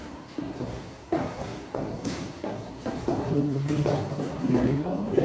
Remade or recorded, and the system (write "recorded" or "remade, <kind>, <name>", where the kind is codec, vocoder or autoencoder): remade, codec, SNAC